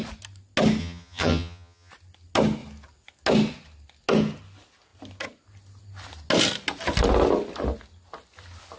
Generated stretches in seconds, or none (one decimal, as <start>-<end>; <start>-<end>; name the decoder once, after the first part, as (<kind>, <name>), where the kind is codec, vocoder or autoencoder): 0.8-1.9 (vocoder, HiFi-GAN)